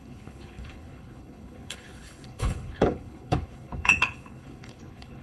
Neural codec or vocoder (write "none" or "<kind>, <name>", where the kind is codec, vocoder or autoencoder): codec, HILCodec